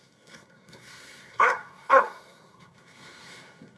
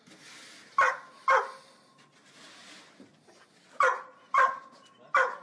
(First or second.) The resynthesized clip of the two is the first